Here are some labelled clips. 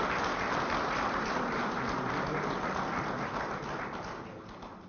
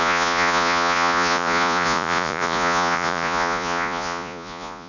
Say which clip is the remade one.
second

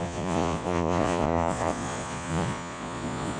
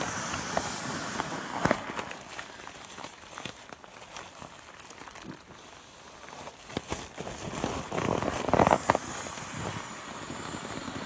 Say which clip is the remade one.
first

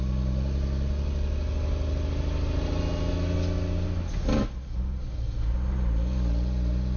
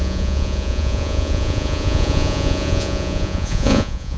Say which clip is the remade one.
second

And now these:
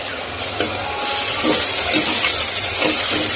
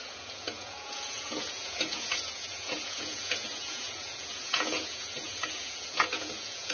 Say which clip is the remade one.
second